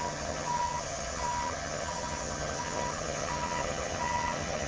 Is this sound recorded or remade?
remade